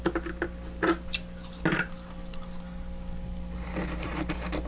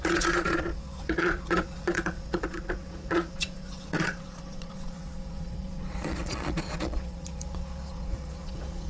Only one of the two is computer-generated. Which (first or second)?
second